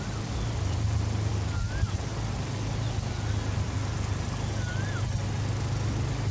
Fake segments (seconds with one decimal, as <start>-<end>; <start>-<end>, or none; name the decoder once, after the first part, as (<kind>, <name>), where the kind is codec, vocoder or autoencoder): none